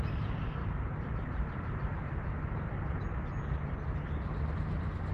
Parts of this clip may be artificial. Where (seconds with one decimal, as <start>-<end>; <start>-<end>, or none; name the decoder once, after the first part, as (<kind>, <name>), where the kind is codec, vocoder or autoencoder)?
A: 0.6-2.7 (vocoder, BigVGAN v2)

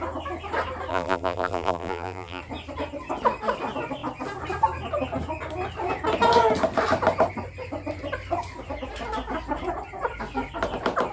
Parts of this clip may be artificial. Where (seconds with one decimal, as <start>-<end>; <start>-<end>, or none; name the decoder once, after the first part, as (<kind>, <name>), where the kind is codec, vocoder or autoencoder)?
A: 0.9-2.4 (vocoder, BigVGAN v2)